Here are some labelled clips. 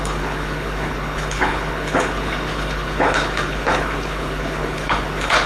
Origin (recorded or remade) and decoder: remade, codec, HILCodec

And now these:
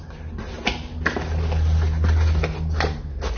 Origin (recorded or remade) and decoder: recorded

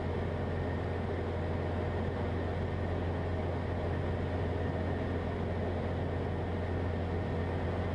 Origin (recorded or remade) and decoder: recorded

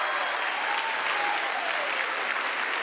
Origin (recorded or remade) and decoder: recorded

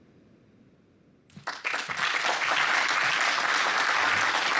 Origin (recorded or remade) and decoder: recorded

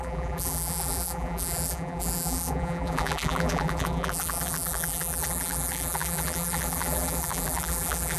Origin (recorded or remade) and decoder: remade, vocoder, BigVGAN v2